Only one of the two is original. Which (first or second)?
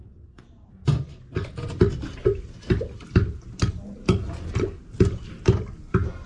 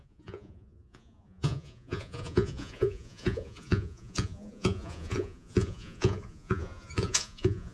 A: first